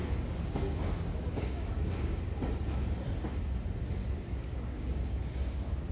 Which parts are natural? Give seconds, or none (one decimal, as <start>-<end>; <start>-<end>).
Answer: 2.2-4.0